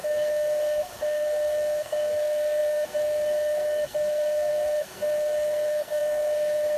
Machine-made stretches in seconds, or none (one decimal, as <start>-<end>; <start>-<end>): 0.0-6.8